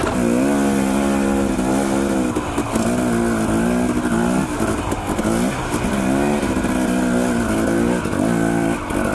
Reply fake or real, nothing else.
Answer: real